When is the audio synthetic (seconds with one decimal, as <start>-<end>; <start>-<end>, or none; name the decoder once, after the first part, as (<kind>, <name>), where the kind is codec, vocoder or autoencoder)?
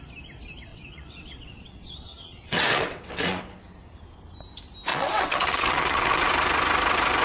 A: 0.7-3.4 (vocoder, WaveNeXt); 4.9-6.3